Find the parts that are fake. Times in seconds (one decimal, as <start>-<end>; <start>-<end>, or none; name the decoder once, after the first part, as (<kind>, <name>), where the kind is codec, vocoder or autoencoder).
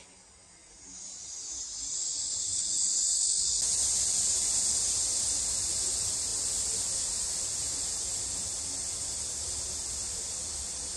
none